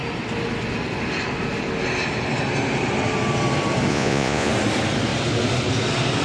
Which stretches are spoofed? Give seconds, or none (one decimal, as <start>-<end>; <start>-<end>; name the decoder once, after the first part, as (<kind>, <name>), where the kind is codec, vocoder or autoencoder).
3.9-4.5 (vocoder, Vocos)